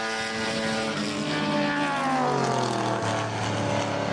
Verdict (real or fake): real